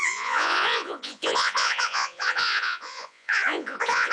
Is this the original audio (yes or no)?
no